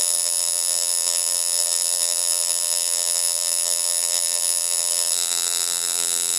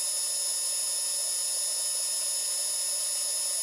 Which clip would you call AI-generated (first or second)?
first